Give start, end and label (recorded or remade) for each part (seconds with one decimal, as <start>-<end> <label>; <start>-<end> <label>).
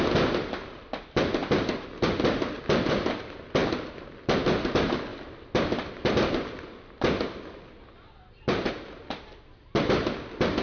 0.0-10.6 recorded